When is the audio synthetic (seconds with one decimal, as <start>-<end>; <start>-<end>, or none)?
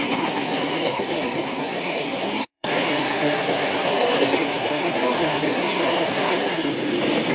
0.0-6.7